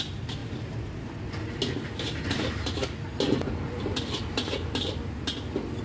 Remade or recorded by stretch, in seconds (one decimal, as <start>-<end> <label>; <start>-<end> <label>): 0.0-5.8 recorded